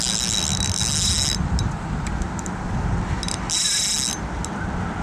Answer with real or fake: real